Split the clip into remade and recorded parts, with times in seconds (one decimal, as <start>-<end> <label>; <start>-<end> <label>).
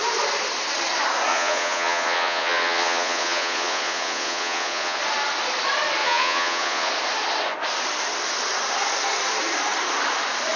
0.0-1.3 recorded; 1.3-5.0 remade; 5.0-6.0 recorded; 6.0-6.9 remade; 6.9-10.6 recorded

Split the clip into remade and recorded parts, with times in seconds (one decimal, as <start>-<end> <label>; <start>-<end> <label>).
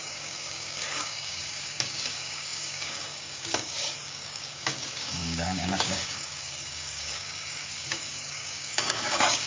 0.0-9.5 remade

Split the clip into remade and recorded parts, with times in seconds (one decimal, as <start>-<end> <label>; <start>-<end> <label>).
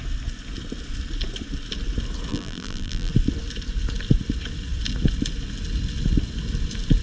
0.0-2.3 recorded; 2.3-3.1 remade; 3.1-7.0 recorded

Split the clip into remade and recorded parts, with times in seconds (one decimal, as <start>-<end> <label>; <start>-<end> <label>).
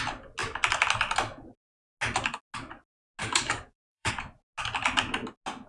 0.0-3.2 recorded; 3.2-4.1 remade; 4.1-5.7 recorded